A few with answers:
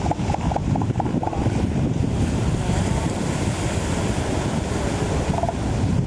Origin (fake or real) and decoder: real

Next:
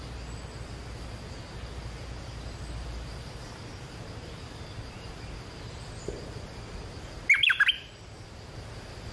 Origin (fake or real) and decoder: real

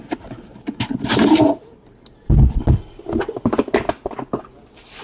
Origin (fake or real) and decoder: real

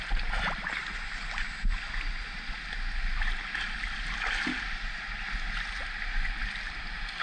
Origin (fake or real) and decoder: real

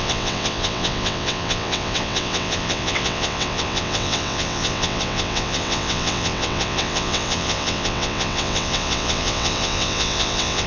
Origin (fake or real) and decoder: fake, vocoder, WaveNeXt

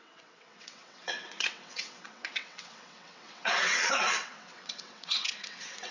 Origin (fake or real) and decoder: fake, vocoder, WaveNeXt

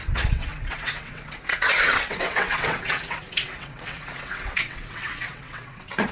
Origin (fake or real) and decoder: fake, vocoder, WaveNeXt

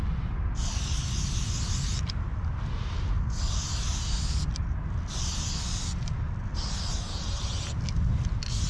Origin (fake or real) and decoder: real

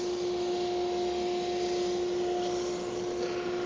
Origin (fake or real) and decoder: real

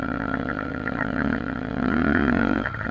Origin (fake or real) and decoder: fake, vocoder, WaveNeXt